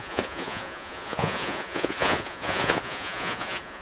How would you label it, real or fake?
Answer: fake